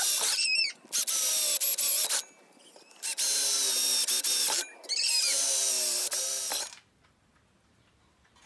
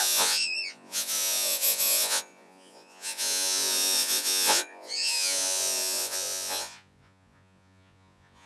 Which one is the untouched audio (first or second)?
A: first